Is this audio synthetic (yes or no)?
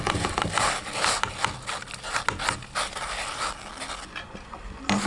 no